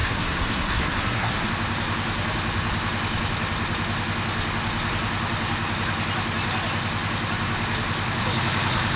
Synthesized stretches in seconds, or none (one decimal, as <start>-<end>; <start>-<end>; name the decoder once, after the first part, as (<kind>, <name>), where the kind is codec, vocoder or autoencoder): 0.0-1.5 (codec, SNAC)